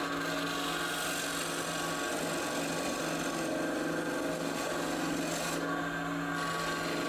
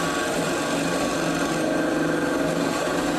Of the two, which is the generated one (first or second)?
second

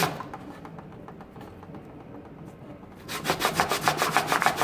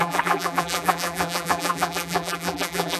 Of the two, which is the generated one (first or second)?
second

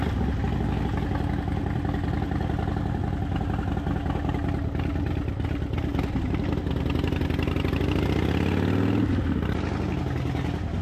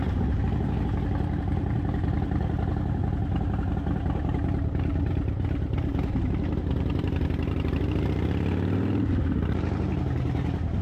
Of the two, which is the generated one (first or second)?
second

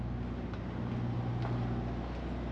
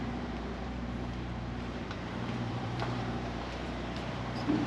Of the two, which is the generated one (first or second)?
second